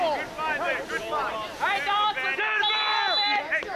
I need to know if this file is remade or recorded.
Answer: recorded